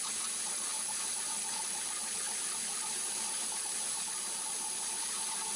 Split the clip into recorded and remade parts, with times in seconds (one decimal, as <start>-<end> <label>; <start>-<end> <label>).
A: 0.0-5.6 recorded